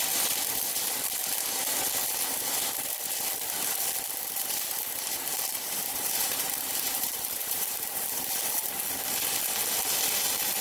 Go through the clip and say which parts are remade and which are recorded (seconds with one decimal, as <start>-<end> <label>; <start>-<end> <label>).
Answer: 0.0-4.4 recorded; 4.4-8.8 remade; 8.8-10.6 recorded